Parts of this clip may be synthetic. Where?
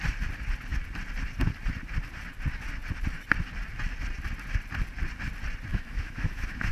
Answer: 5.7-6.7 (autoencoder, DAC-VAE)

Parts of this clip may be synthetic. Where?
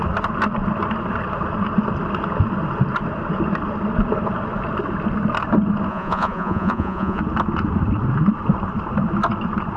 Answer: 5.9-7.2 (vocoder, Vocos)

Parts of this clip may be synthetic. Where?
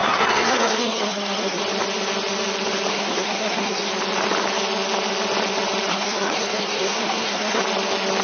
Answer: 0.0-1.6 (codec, SNAC); 2.9-3.9; 5.9-7.6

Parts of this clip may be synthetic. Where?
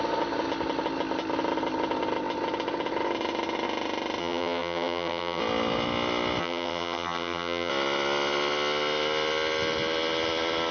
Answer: 4.2-5.4 (vocoder, HiFi-GAN); 6.4-7.7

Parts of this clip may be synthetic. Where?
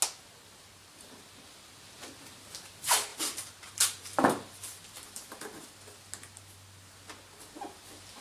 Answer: 3.1-5.6 (vocoder, BigVGAN v2)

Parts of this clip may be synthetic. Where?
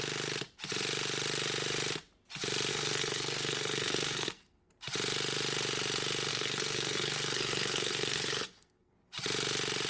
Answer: 2.7-4.7 (codec, SNAC); 6.3-8.9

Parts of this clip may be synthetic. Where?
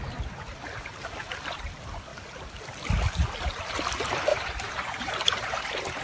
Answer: 4.3-6.0 (vocoder, BigVGAN v2)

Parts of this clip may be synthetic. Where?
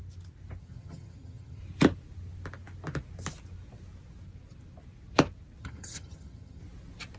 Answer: 0.6-1.6 (vocoder, HiFi-GAN); 5.6-6.6